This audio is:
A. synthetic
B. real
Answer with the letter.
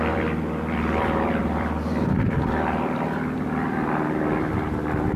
A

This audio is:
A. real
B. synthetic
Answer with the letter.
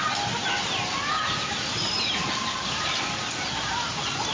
A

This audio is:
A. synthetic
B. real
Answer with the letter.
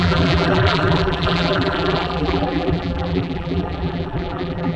A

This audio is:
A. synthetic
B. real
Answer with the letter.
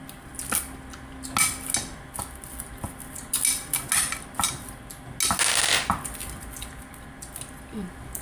B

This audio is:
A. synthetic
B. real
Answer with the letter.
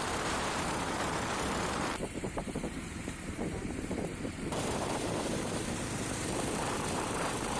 A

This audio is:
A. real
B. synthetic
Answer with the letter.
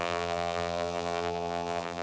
B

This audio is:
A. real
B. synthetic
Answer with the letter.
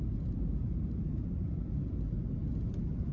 B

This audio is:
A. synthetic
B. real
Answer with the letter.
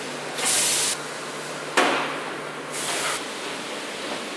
B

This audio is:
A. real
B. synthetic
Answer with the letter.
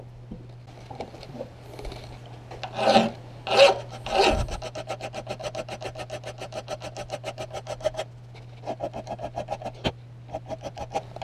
A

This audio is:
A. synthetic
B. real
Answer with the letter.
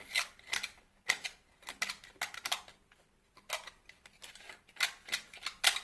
B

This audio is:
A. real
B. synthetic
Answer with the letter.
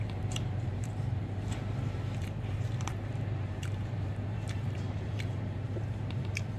B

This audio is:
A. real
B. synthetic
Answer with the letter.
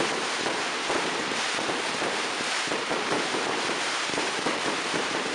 B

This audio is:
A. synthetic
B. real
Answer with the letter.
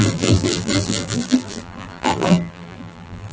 A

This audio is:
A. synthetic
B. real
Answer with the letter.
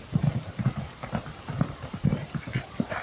B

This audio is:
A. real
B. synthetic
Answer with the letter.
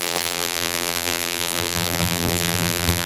B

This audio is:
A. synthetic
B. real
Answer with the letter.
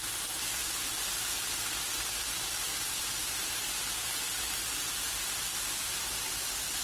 A